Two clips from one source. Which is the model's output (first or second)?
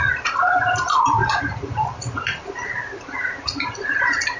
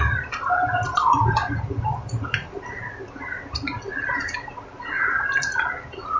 first